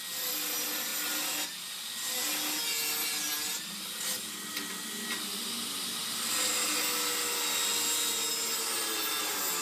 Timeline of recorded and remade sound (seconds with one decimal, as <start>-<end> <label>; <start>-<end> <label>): 0.0-9.6 recorded